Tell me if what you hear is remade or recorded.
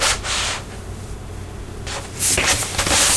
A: recorded